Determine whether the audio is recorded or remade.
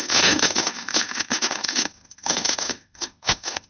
remade